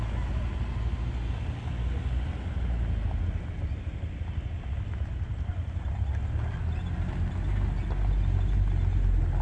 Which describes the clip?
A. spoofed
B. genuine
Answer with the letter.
B